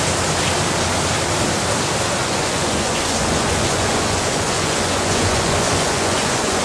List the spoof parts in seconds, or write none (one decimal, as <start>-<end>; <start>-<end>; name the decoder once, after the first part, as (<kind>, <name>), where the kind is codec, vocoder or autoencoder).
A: 2.2-6.6 (vocoder, Vocos)